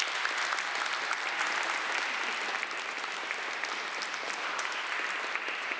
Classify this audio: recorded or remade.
recorded